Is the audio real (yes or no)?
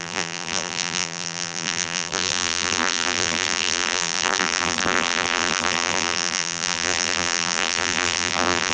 no